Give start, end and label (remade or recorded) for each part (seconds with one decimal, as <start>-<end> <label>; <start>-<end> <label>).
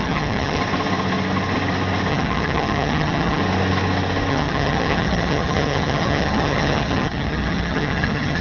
0.0-0.6 remade; 0.6-2.1 recorded; 2.1-3.4 remade; 3.4-4.3 recorded; 4.3-8.4 remade